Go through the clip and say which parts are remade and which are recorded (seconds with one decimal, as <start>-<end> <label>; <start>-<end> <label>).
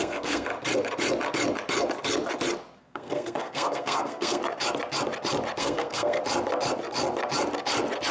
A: 0.0-0.5 remade; 0.5-2.8 recorded; 2.8-4.4 remade; 4.4-5.6 recorded; 5.6-6.2 remade; 6.2-8.1 recorded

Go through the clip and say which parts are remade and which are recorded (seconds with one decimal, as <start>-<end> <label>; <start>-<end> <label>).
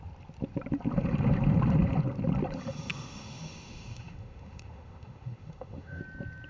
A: 0.0-2.9 recorded; 2.9-6.0 remade; 6.0-6.5 recorded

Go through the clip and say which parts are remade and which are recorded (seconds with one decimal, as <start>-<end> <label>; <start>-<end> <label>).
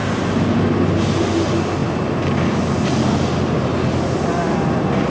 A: 0.0-5.1 recorded